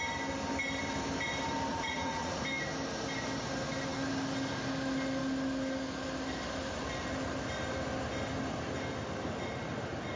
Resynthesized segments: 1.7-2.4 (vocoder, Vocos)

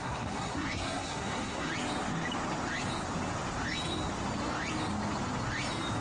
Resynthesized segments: 0.0-1.7 (codec, SNAC)

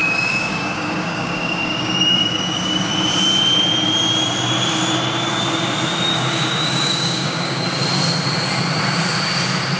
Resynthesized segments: 0.0-2.9 (codec, DAC); 6.1-7.6

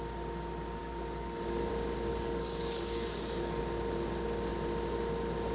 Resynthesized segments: 0.8-1.7 (codec, DAC); 2.1-3.6

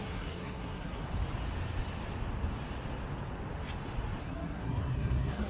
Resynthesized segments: 0.0-1.0 (codec, SNAC); 4.2-5.5

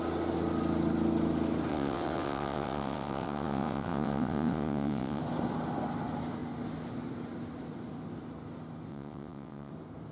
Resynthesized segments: 1.7-5.2 (vocoder, WaveNeXt); 8.9-9.7

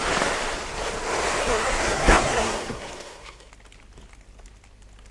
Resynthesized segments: 1.4-3.5 (codec, SNAC)

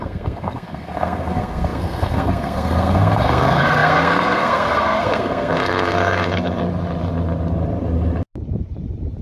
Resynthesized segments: 0.0-6.6 (codec, SNAC)